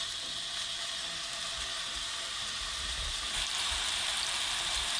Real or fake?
fake